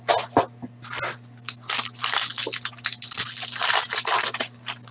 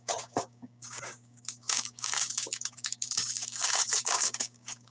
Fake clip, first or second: second